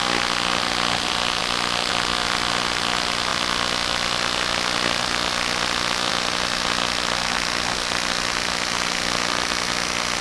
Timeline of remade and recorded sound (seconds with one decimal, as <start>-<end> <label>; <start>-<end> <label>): 0.0-10.2 recorded